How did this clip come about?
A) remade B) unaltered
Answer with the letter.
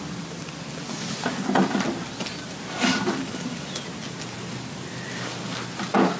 B